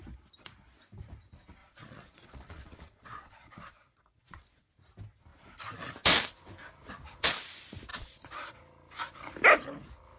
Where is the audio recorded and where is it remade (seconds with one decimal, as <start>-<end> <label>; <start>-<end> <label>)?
0.0-1.6 recorded; 1.6-4.4 remade; 4.4-7.9 recorded; 7.9-8.6 remade; 8.6-10.2 recorded